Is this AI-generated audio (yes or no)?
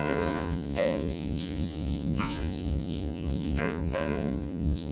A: yes